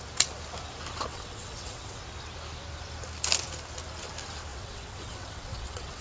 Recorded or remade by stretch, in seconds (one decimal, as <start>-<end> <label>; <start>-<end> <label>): 0.0-1.1 recorded; 1.1-2.0 remade; 2.0-4.5 recorded; 4.5-6.0 remade